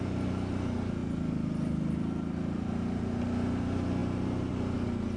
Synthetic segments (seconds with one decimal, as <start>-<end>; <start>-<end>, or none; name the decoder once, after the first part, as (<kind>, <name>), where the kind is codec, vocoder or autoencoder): none

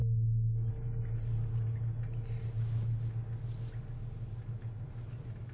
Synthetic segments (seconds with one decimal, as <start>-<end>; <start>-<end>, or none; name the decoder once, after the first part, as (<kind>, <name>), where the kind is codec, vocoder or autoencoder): 0.0-0.7 (codec, SNAC)

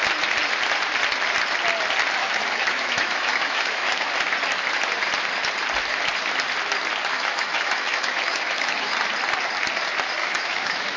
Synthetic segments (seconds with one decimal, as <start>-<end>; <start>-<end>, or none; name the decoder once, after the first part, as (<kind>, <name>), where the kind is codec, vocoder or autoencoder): 2.2-4.1 (autoencoder, DAC-VAE); 7.1-9.0; 10.2-11.0

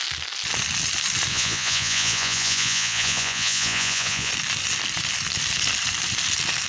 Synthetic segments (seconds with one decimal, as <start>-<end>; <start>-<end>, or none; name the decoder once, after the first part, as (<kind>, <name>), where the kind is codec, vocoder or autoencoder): 1.3-4.3 (vocoder, Vocos)

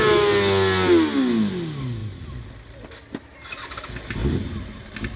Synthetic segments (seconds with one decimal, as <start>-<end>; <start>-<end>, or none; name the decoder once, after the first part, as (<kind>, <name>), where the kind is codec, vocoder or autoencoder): 4.2-4.8 (vocoder, BigVGAN v2)

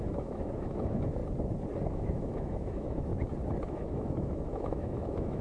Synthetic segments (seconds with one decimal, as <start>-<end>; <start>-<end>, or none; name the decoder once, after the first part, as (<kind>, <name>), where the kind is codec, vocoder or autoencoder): 0.0-1.2 (autoencoder, DAC-VAE); 1.9-3.1; 3.6-5.4